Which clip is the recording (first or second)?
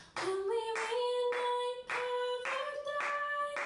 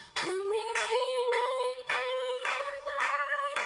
first